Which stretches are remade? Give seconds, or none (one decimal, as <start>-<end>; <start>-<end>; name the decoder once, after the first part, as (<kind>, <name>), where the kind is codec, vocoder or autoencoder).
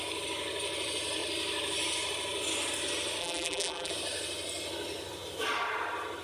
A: 3.2-3.9 (vocoder, BigVGAN v2)